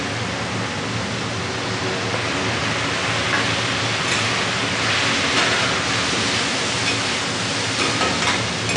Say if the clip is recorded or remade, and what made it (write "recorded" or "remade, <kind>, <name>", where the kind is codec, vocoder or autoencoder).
recorded